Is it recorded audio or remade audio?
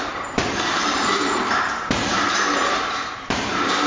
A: remade